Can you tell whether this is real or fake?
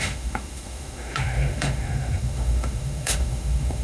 fake